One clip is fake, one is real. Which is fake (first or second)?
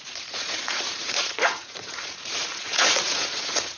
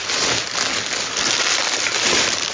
first